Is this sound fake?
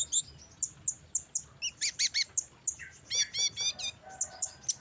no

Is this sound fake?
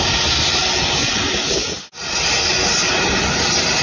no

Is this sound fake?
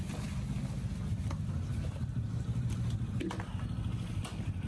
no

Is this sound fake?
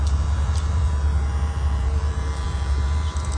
yes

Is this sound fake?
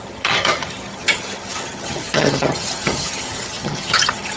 yes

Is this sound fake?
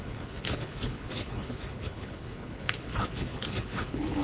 yes